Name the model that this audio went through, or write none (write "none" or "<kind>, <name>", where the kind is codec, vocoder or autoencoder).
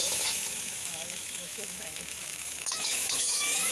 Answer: autoencoder, DAC-VAE